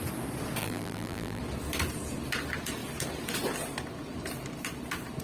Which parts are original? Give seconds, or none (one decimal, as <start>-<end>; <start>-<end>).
0.0-0.6; 1.4-5.2